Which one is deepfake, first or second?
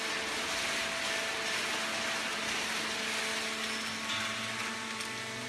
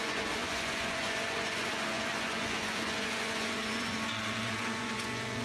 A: second